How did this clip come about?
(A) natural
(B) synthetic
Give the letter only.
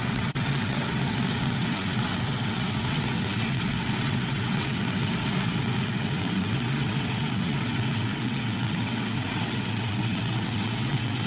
B